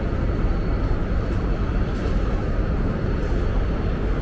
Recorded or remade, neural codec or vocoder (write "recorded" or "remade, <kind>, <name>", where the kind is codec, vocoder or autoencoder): recorded